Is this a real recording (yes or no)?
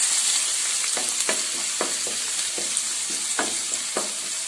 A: yes